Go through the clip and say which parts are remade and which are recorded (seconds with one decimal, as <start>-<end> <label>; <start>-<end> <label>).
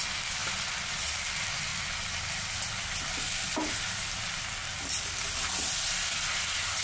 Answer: 0.0-6.8 recorded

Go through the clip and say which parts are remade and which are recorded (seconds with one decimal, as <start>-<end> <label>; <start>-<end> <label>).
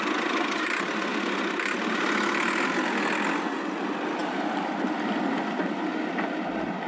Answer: 0.0-6.9 recorded